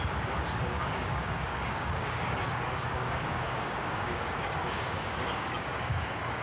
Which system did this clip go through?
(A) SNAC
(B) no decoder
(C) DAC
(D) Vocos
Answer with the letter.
C